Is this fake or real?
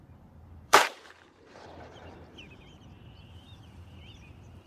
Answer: fake